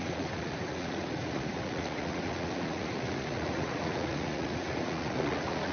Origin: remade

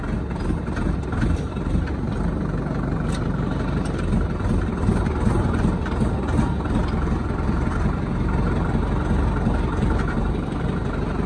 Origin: remade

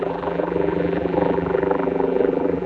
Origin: remade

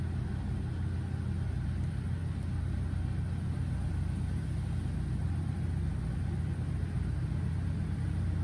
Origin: recorded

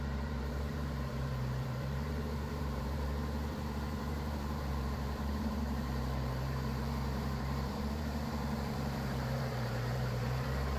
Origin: remade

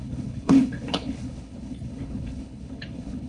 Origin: remade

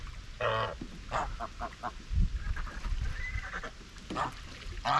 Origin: recorded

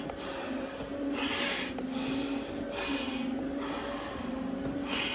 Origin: recorded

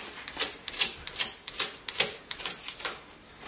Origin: recorded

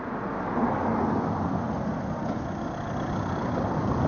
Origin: recorded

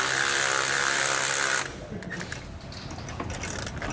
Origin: recorded